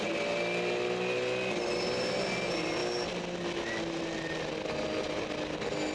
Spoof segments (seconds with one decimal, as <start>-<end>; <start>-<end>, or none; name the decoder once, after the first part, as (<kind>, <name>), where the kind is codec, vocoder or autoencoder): none